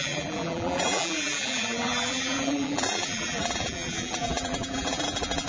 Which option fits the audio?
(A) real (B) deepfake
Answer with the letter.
B